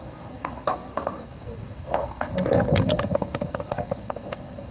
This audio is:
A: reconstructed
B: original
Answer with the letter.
A